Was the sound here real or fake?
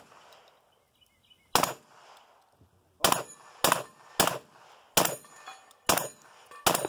real